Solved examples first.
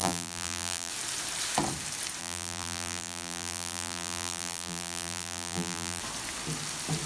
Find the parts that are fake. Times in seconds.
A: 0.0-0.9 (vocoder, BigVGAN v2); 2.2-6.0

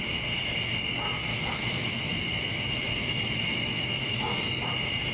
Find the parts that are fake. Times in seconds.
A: 1.3-4.4 (autoencoder, DAC-VAE)

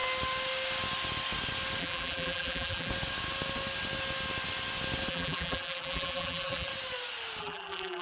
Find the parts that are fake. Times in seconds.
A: 1.8-2.9 (vocoder, BigVGAN v2); 5.1-6.7; 7.4-8.0

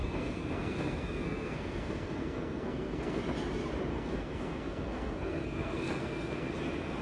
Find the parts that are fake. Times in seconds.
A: 0.0-3.2 (codec, SNAC); 3.9-6.5